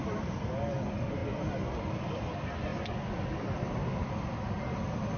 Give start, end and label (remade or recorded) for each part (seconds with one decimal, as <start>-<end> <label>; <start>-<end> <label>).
0.0-5.2 recorded